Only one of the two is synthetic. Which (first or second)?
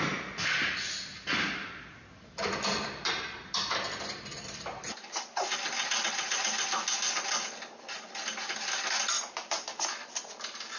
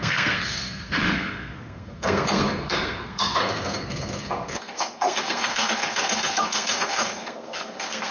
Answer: second